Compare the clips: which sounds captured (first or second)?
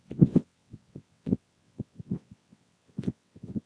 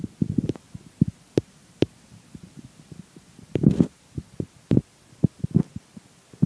second